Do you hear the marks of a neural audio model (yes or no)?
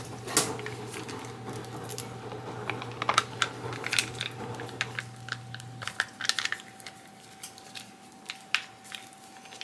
no